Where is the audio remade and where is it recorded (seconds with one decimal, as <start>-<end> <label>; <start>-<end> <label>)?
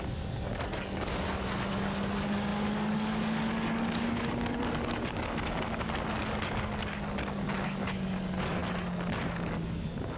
0.0-8.6 remade; 8.6-9.2 recorded; 9.2-10.2 remade